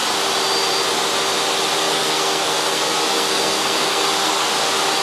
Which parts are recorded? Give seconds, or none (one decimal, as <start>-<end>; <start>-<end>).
0.0-1.8; 4.5-5.0